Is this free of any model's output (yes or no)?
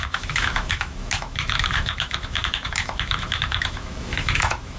no